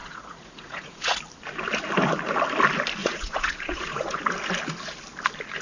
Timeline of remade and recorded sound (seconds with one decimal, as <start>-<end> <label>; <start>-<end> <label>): 0.0-1.2 remade; 1.2-3.0 recorded; 3.0-4.2 remade; 4.2-5.6 recorded

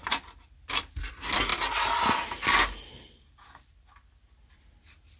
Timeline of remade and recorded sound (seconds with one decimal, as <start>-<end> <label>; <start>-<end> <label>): 0.0-5.2 recorded